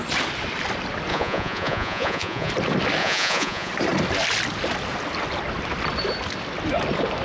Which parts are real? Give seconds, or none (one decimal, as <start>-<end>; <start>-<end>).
0.0-1.1; 2.5-3.0; 3.7-7.2